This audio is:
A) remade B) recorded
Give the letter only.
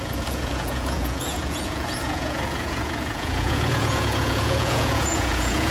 A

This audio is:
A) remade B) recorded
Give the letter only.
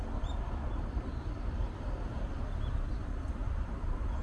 A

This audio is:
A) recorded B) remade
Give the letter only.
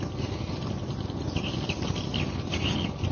A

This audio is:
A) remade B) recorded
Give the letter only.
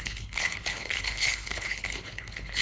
A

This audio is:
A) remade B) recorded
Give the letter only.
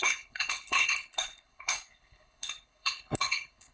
A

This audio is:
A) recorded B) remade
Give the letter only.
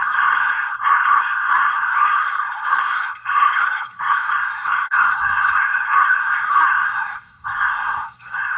B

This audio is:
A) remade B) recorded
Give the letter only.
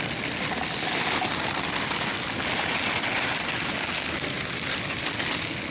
B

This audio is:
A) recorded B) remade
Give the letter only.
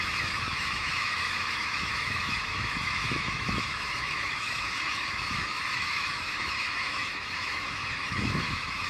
B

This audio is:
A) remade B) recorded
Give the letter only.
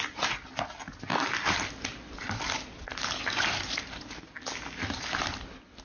B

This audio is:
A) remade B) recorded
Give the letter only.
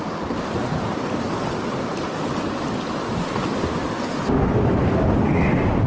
B